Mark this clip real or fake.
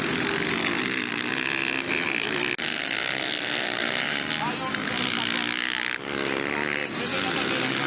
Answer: real